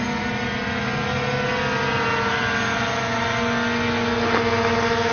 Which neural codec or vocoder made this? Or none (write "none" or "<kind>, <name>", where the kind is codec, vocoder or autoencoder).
none